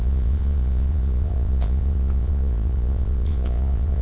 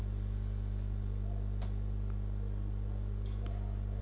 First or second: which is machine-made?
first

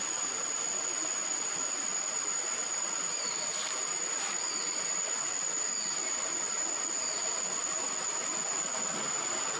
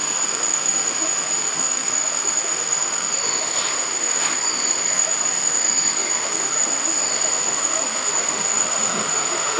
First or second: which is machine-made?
second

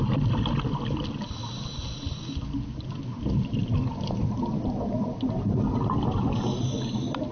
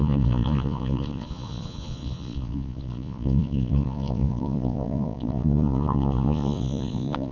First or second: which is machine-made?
second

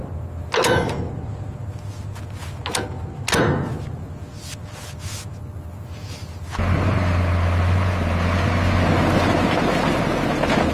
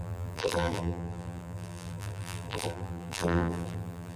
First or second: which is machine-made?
second